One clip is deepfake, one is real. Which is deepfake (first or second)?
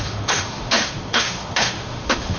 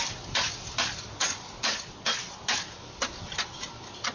first